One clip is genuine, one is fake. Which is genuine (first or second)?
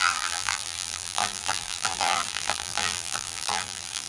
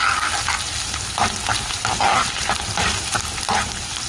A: second